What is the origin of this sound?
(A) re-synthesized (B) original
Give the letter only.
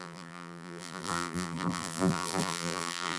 A